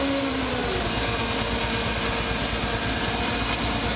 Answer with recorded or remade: recorded